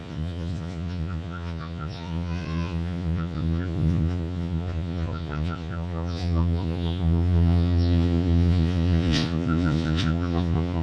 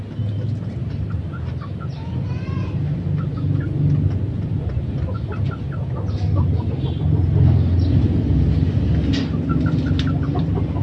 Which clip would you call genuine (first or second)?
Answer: second